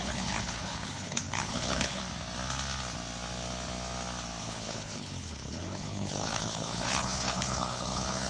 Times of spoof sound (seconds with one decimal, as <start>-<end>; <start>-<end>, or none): 0.0-2.0; 4.4-8.3

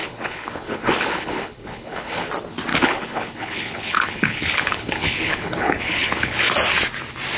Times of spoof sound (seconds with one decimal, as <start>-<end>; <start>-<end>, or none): 0.0-2.3; 2.7-6.5